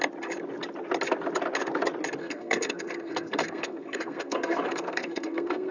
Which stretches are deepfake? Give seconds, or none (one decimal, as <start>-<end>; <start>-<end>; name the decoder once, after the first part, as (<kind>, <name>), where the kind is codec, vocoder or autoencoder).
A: 2.2-5.7 (codec, SNAC)